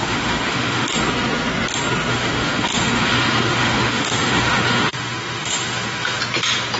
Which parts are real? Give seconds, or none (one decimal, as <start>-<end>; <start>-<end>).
1.0-2.1; 6.2-6.8